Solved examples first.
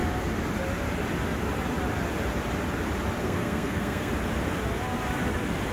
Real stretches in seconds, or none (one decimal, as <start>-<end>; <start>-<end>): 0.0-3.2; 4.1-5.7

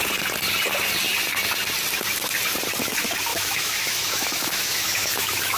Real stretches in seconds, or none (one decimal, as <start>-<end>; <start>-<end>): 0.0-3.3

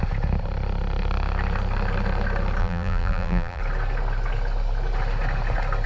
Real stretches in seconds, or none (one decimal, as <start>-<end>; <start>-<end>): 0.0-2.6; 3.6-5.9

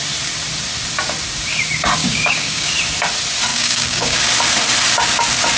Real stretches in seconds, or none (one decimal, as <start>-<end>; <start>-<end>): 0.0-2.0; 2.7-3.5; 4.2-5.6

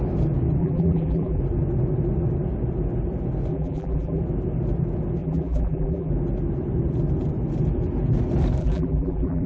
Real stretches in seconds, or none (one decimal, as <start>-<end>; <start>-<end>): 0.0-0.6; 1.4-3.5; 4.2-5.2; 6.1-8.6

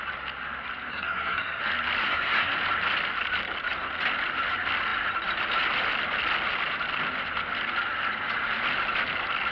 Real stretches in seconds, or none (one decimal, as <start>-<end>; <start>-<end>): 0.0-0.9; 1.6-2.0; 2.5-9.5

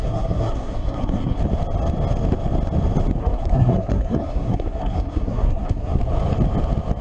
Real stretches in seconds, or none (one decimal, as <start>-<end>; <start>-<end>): 1.4-3.2; 6.0-7.0

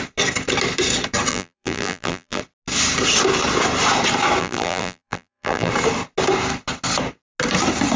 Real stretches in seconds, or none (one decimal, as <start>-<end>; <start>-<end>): 0.0-1.3; 2.4-4.4; 5.7-8.0